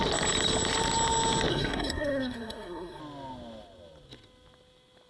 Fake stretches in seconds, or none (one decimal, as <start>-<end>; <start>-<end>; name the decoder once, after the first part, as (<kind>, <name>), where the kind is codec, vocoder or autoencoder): 1.5-3.0 (codec, SNAC)